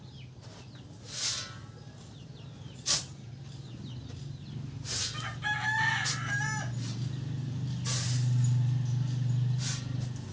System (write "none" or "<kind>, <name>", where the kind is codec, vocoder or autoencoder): none